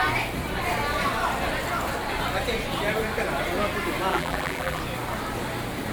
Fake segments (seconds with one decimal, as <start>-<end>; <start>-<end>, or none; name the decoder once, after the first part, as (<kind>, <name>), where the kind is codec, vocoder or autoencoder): 4.1-4.8 (vocoder, BigVGAN v2)